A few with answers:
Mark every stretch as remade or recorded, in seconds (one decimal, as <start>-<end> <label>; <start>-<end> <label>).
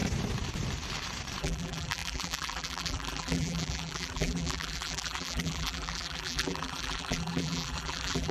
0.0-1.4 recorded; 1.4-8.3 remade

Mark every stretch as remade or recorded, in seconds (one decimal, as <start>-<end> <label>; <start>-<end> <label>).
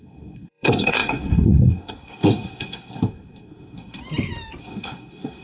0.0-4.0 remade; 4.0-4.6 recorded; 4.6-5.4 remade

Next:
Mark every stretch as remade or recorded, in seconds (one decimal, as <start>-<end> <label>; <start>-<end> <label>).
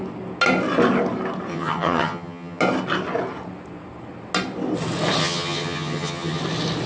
0.0-1.5 recorded; 1.5-2.6 remade; 2.6-5.2 recorded; 5.2-6.4 remade; 6.4-6.9 recorded